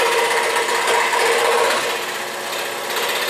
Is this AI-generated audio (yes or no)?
no